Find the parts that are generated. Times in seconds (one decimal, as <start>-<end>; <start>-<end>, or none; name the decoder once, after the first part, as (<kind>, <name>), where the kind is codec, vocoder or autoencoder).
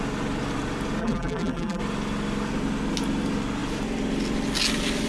1.0-1.8 (vocoder, BigVGAN v2)